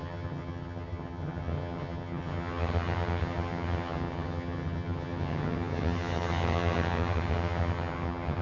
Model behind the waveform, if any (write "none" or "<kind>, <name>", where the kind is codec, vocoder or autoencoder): vocoder, HiFi-GAN